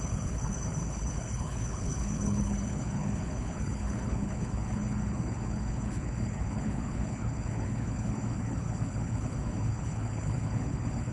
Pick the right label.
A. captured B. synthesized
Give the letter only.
B